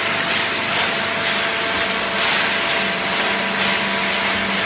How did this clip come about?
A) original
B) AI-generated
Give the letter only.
A